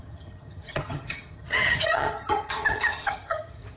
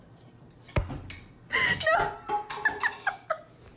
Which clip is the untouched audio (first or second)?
second